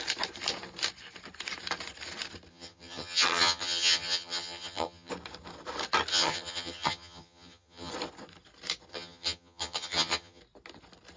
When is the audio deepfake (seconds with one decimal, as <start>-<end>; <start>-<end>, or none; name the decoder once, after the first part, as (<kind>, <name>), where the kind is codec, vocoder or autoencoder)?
2.5-5.1 (vocoder, HiFi-GAN); 6.1-7.9; 8.9-10.4